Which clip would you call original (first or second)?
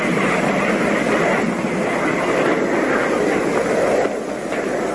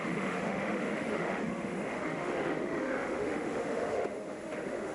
first